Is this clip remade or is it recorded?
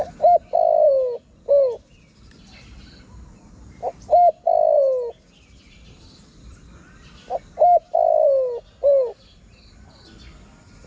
recorded